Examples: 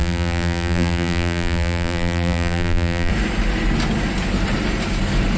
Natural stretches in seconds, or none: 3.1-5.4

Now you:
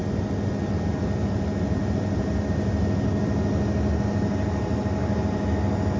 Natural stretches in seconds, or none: 0.0-6.0

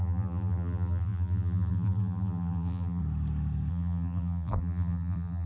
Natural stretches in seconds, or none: 3.0-3.7

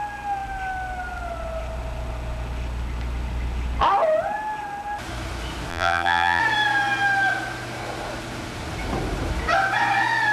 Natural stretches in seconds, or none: 0.0-5.7; 6.4-10.3

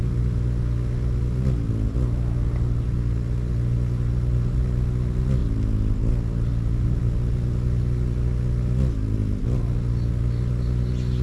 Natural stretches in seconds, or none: 0.0-11.2

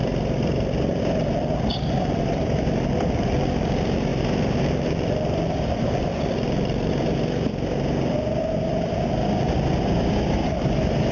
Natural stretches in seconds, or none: 0.0-1.7; 2.4-4.1; 6.9-11.1

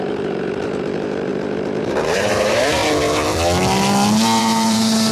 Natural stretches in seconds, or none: 1.3-2.0; 2.8-4.4

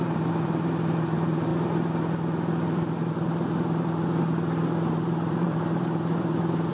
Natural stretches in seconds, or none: 1.5-4.9